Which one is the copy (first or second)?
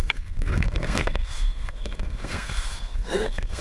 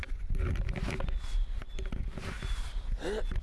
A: first